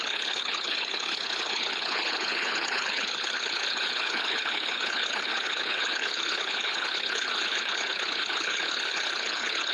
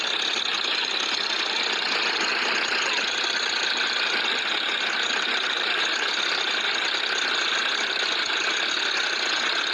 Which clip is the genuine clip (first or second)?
second